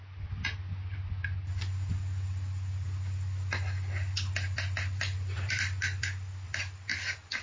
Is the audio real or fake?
real